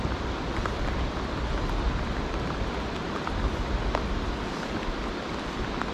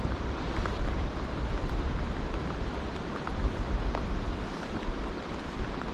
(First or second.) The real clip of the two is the first